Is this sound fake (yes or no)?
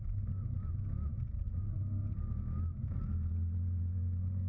no